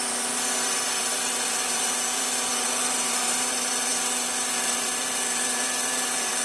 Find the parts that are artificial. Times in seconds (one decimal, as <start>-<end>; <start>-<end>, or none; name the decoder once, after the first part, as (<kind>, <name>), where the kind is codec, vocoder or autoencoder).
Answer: 0.0-3.9 (vocoder, BigVGAN v2); 4.5-6.4